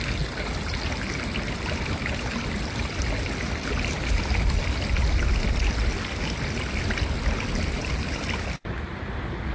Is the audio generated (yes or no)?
no